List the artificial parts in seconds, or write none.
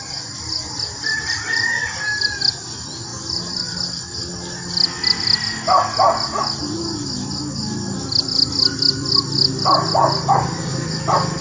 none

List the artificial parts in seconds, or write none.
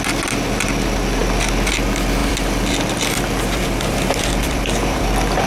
2.2-5.5 (vocoder, BigVGAN v2)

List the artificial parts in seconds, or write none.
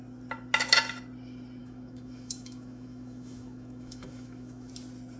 1.6-4.7 (autoencoder, DAC-VAE)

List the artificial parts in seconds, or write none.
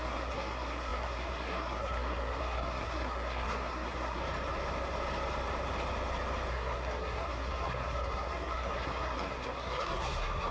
0.0-4.2 (codec, SNAC); 6.5-10.5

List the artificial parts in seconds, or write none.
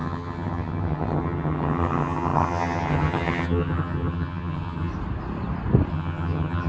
0.0-4.9 (vocoder, HiFi-GAN); 5.9-6.7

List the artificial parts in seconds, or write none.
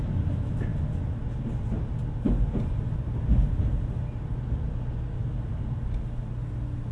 none